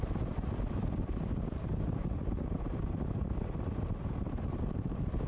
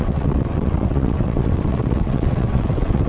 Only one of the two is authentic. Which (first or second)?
first